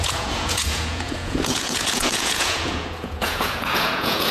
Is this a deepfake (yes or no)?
yes